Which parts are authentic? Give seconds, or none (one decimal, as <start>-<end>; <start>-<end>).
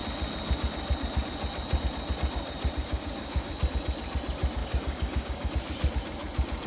0.0-2.9; 3.5-4.6; 5.5-6.7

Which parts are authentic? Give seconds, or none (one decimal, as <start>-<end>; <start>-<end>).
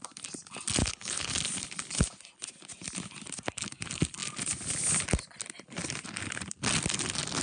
0.0-0.8; 1.3-7.4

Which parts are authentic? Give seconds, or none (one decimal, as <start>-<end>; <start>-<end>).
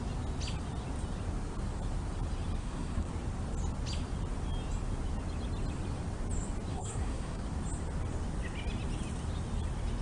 0.0-2.6; 3.1-6.7; 7.4-10.0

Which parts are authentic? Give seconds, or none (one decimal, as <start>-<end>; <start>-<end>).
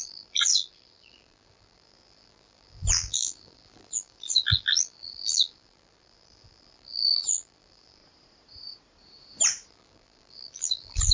8.0-9.7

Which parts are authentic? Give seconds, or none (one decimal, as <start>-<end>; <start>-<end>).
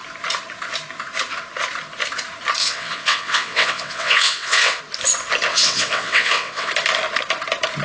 0.0-2.6; 4.8-5.5; 6.7-7.8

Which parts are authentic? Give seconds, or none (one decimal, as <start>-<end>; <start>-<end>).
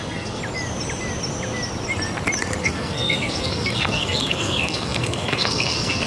0.4-2.6